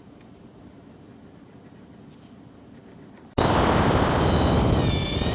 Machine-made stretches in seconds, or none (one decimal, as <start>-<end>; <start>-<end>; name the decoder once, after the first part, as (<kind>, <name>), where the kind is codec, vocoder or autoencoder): none